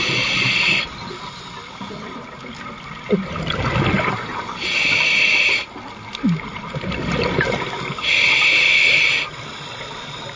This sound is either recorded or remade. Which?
recorded